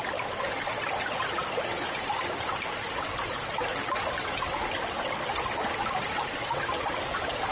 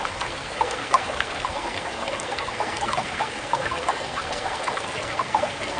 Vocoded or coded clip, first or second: second